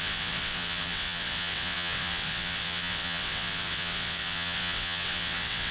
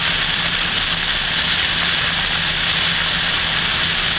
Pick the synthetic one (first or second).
first